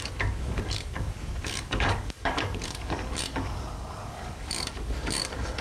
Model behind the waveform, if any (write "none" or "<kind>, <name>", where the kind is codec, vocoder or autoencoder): codec, DAC